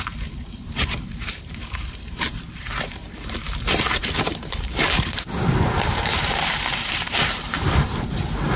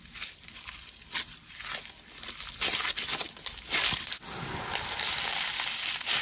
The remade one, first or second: first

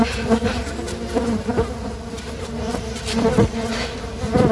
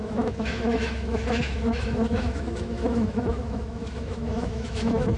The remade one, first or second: second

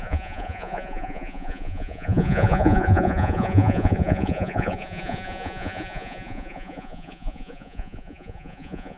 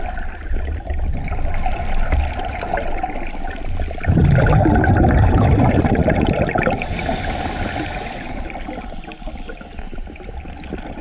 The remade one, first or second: first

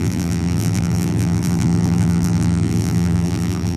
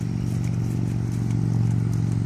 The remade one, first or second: first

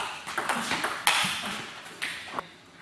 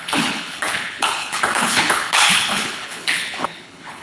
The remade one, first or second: second